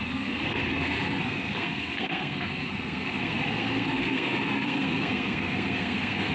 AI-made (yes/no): yes